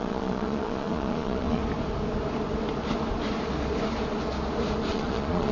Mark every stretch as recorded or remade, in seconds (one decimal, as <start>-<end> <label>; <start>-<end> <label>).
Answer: 0.0-1.6 remade; 1.6-4.9 recorded; 4.9-5.5 remade